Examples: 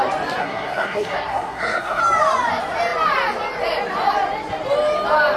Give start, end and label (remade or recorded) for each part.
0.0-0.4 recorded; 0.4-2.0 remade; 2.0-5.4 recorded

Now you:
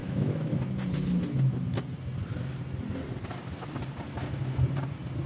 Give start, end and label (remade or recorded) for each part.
0.0-0.6 remade; 0.6-5.3 recorded

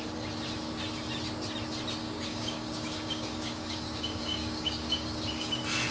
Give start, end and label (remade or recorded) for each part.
0.0-2.0 recorded; 2.0-5.5 remade; 5.5-5.9 recorded

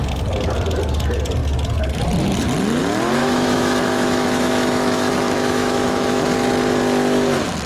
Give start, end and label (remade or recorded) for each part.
0.0-3.2 recorded; 3.2-6.2 remade; 6.2-7.7 recorded

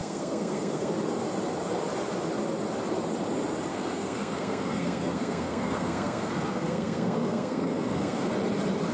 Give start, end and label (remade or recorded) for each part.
0.0-0.9 remade; 0.9-3.7 recorded; 3.7-8.3 remade; 8.3-8.9 recorded

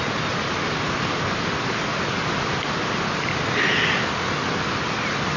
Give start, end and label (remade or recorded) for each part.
0.0-5.4 recorded

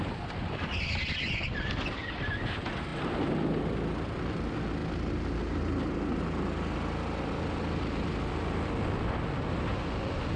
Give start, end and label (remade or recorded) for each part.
0.0-10.4 recorded

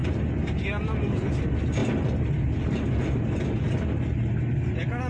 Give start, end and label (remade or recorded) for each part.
0.0-5.1 recorded